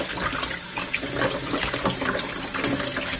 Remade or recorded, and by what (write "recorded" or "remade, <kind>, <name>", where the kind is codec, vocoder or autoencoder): recorded